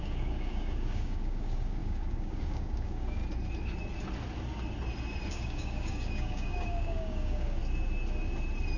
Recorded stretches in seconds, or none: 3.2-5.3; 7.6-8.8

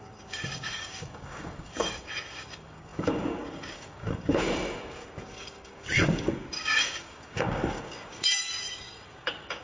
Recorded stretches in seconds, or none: none

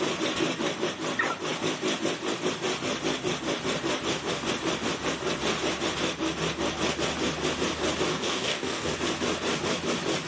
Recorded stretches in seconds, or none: 0.0-8.1; 8.9-10.3

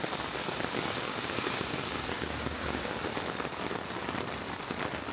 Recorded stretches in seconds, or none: 0.0-1.1; 2.9-5.1

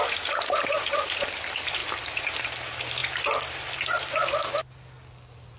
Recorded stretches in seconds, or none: 0.0-5.6

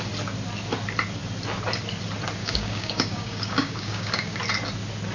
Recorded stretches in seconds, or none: 0.0-2.4; 4.4-5.1